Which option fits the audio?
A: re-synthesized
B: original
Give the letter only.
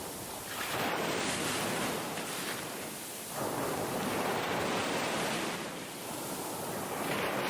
B